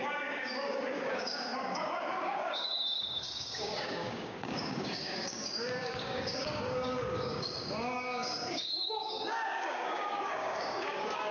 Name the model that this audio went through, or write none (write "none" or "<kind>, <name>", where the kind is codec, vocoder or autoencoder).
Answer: codec, DAC